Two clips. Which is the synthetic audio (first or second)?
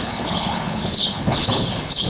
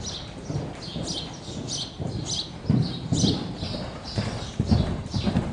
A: first